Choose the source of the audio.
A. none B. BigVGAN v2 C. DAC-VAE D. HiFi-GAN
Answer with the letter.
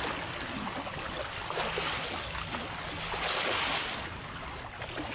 A